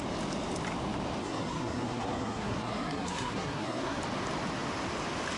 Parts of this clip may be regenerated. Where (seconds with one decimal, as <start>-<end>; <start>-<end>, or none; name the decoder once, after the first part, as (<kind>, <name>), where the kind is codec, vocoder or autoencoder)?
1.2-4.0 (codec, SNAC)